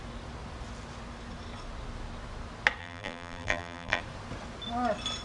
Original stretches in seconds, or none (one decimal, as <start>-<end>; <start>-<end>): 0.0-2.8; 4.0-5.2